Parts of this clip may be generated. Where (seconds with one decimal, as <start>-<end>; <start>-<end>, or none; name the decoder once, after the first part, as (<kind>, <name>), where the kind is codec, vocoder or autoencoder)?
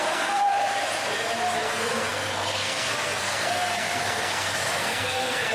0.0-0.5 (codec, SNAC); 1.6-5.5